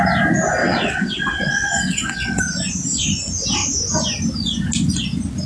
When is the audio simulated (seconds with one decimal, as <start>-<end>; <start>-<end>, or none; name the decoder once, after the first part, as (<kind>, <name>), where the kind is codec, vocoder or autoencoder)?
0.6-2.4 (vocoder, WaveNeXt)